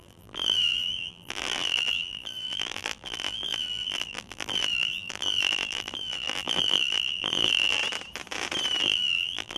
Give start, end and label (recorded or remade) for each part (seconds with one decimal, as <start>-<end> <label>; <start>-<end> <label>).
0.0-7.8 remade; 7.8-8.8 recorded; 8.8-9.6 remade